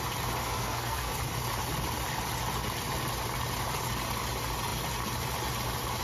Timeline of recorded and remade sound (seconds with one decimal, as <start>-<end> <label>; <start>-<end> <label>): 0.0-0.4 recorded; 0.4-1.1 remade; 1.1-6.0 recorded